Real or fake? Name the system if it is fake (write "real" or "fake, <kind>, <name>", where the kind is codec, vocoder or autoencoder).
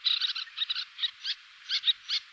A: real